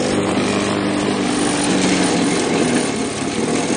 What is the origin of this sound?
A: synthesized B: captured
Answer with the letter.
B